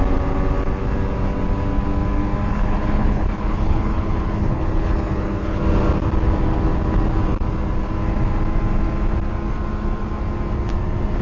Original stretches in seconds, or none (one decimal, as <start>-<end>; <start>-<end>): 0.0-2.5; 5.6-11.2